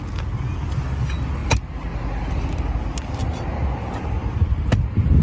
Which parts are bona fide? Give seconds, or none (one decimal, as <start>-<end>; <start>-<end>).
0.0-5.2